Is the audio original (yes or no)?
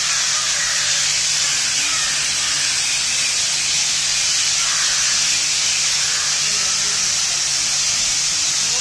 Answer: yes